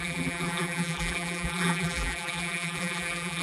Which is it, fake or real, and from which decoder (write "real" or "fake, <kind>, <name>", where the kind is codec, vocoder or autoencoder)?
fake, vocoder, BigVGAN v2